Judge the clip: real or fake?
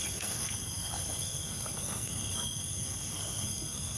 fake